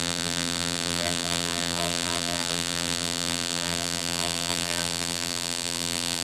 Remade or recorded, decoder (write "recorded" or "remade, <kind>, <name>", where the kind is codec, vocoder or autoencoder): remade, vocoder, BigVGAN v2